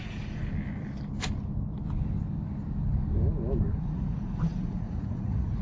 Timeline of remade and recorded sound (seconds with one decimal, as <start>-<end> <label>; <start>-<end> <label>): 0.0-0.4 remade; 0.4-3.8 recorded; 3.8-5.6 remade